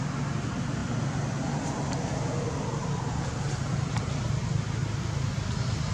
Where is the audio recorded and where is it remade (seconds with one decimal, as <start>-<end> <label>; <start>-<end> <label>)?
0.0-5.9 recorded